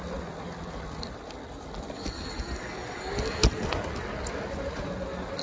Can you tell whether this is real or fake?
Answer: real